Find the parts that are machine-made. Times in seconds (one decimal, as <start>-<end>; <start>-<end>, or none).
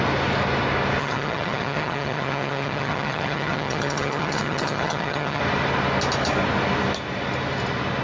1.0-5.4